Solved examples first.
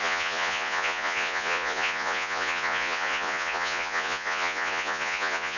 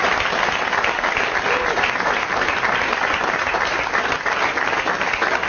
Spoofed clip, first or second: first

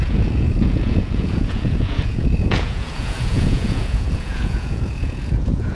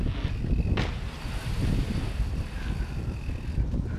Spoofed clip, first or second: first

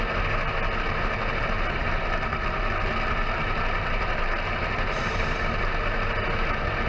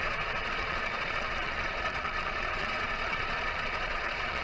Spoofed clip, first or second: second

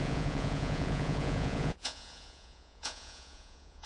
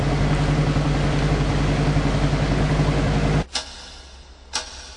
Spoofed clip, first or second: first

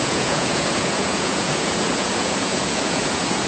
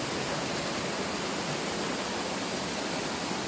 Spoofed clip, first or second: first